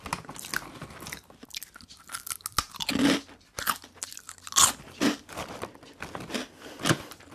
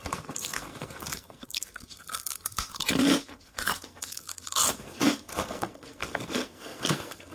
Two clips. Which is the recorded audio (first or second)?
first